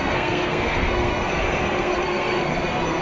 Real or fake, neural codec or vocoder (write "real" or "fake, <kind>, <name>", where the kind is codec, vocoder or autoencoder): fake, codec, SNAC